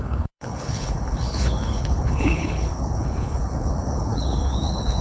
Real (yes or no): no